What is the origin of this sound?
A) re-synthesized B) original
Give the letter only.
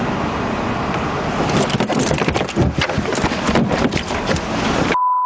B